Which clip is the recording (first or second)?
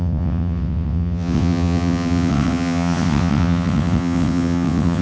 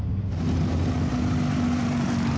second